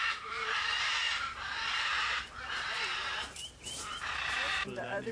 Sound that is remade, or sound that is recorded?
remade